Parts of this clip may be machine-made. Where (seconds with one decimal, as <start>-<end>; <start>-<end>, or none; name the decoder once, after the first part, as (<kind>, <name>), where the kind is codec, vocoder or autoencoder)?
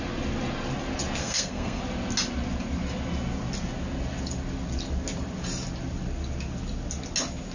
1.2-1.8 (codec, SNAC)